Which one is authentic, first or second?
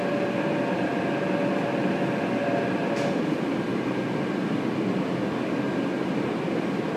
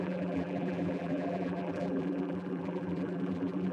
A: first